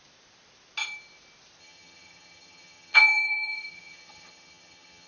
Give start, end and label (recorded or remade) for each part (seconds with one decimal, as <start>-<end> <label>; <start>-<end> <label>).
0.0-1.6 recorded; 1.6-5.1 remade